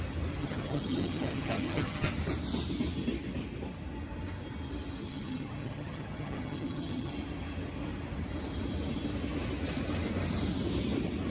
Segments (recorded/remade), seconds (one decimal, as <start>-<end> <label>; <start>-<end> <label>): 0.0-0.4 recorded; 0.4-2.1 remade; 2.1-5.0 recorded; 5.0-7.1 remade; 7.1-11.3 recorded